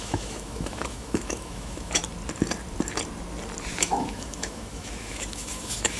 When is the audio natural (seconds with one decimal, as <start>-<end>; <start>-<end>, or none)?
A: 2.0-3.8